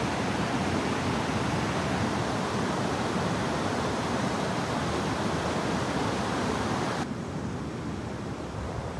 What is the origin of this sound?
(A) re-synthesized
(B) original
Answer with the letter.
B